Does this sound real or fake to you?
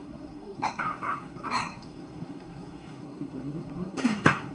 fake